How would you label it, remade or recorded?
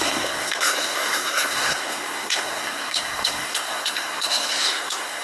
remade